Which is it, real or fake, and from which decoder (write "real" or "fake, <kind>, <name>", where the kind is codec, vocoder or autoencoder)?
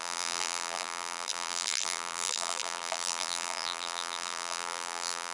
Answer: fake, vocoder, BigVGAN v2